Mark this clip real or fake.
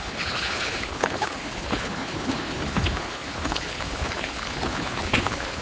fake